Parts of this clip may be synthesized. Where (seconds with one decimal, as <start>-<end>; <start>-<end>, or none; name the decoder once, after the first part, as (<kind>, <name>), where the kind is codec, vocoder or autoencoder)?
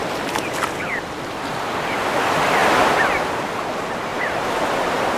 4.1-5.2 (vocoder, BigVGAN v2)